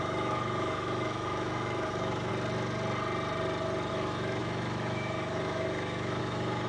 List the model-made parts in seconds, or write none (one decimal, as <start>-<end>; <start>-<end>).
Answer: 0.0-2.3; 3.9-6.7